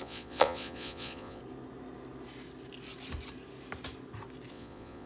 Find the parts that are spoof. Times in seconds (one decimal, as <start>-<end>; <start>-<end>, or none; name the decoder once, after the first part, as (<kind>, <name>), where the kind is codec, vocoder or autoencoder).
0.0-1.4 (vocoder, Vocos); 4.5-5.1